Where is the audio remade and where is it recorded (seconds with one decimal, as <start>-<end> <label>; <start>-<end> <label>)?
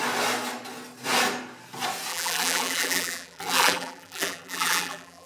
0.0-2.1 recorded; 2.1-5.3 remade